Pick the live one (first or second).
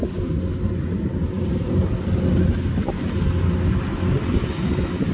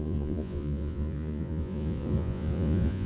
first